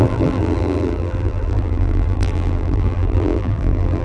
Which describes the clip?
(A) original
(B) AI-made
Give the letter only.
B